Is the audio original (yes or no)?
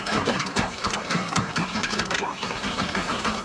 no